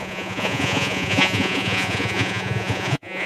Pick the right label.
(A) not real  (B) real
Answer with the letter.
A